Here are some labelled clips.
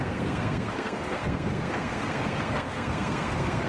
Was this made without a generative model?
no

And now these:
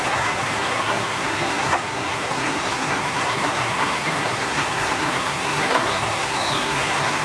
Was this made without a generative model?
no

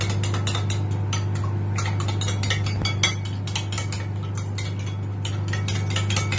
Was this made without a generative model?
yes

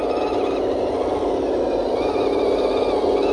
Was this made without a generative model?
yes